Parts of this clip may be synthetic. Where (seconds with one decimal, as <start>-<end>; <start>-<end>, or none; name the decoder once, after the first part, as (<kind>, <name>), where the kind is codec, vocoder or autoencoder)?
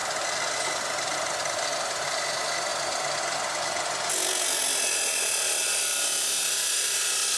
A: none